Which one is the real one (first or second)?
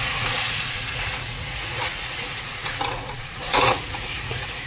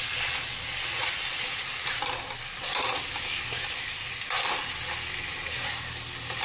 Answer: second